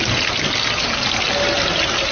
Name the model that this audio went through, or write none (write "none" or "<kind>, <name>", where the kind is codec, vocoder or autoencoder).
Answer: none